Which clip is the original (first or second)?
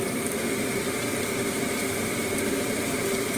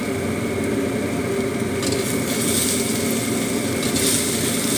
second